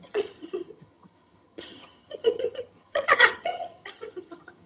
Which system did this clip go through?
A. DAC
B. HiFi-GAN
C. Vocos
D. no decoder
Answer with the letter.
B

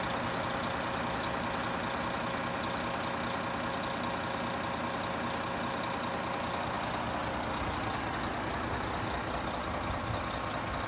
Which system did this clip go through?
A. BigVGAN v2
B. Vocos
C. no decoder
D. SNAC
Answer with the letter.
C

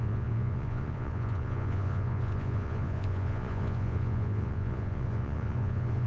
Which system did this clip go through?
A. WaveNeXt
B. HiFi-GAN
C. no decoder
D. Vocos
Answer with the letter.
D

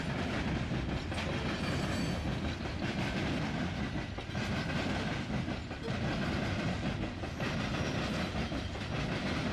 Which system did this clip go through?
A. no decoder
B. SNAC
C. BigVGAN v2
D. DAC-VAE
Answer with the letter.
A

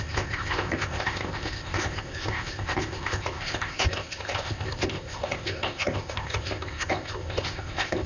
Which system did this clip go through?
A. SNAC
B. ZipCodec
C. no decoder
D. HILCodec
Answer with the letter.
B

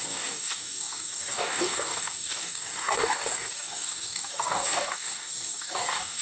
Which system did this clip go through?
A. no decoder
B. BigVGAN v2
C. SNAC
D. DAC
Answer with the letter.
D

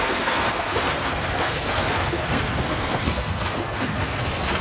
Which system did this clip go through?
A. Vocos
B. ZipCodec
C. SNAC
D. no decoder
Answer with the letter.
C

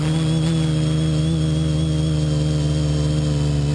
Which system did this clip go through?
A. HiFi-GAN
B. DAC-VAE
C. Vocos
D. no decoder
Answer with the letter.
D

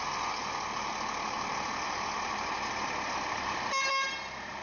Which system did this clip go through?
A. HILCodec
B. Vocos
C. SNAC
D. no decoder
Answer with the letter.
D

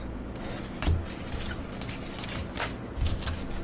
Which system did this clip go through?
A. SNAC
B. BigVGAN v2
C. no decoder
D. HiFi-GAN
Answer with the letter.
C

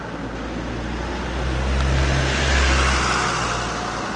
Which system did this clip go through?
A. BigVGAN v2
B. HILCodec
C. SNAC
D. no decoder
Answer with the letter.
D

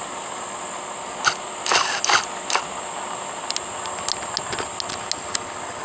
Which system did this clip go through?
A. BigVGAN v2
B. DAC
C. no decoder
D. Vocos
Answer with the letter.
C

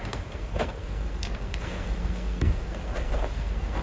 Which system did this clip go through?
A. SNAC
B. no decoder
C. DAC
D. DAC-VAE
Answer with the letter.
A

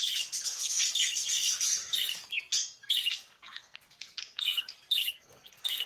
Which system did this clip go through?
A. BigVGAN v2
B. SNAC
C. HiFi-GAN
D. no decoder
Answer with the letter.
B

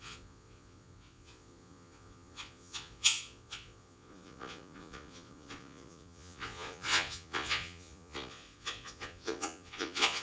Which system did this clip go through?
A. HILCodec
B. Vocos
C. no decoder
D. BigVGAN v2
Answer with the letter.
B